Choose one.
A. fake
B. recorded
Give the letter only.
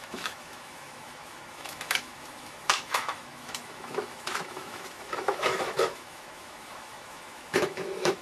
A